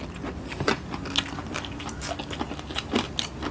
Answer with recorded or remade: recorded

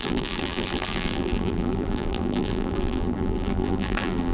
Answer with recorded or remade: remade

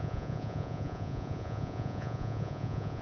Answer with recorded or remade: remade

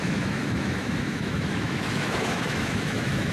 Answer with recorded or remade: remade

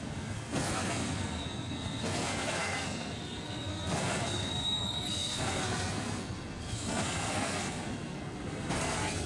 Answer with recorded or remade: remade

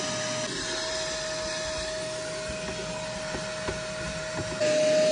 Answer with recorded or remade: recorded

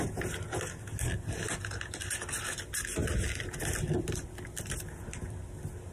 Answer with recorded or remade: recorded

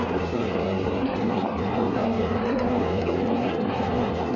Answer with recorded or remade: remade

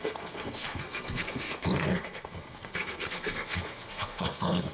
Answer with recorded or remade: remade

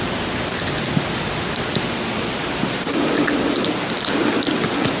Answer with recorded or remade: recorded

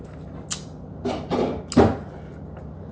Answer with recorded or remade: recorded